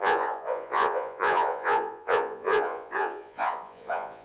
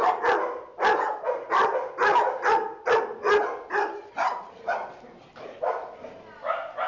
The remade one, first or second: first